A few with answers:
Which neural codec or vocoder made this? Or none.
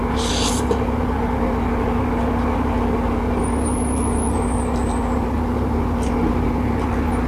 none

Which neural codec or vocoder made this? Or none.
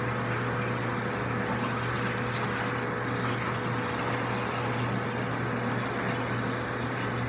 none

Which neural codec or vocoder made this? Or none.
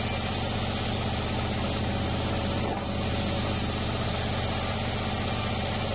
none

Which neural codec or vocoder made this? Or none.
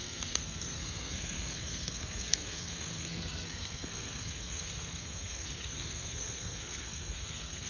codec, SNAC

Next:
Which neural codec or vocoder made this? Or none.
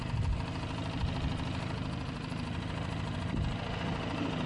none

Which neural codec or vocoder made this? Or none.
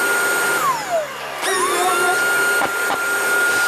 none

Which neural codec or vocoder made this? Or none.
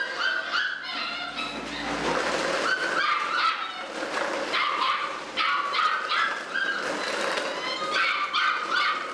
none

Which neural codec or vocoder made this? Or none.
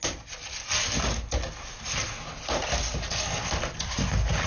none